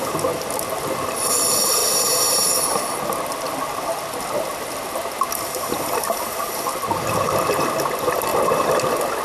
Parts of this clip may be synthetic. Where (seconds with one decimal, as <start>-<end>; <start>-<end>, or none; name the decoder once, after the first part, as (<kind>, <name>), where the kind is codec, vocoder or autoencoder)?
1.8-2.9 (vocoder, BigVGAN v2)